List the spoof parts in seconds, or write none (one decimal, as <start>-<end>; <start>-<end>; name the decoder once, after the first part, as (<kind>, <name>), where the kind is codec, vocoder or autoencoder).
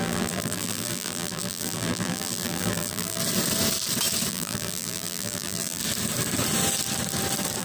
0.0-3.2 (vocoder, BigVGAN v2); 4.3-5.8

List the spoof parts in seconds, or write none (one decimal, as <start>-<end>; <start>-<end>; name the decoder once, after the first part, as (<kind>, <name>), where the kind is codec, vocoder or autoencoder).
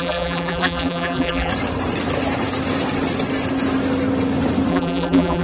0.0-1.5 (vocoder, BigVGAN v2); 4.7-5.4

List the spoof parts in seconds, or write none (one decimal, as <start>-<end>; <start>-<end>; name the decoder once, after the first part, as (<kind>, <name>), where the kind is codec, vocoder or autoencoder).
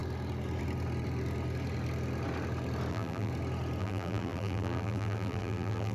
2.9-3.3 (vocoder, BigVGAN v2); 3.8-5.9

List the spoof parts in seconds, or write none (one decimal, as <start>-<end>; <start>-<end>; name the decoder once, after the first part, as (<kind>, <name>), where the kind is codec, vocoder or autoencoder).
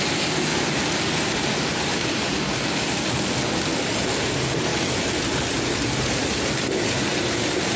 0.0-2.0 (vocoder, BigVGAN v2); 4.2-4.7; 5.4-7.8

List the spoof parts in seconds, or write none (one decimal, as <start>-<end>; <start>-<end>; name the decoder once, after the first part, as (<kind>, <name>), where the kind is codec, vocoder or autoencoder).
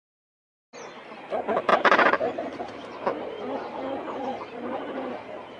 1.7-5.1 (vocoder, BigVGAN v2)